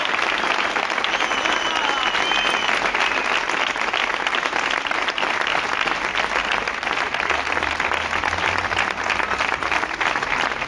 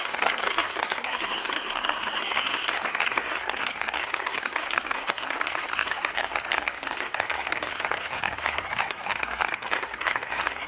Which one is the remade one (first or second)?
second